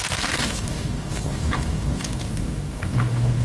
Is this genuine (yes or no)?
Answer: no